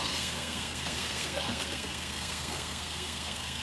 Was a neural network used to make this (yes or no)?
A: yes